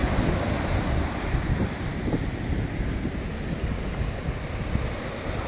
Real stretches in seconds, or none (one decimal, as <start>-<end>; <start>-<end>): 0.0-5.5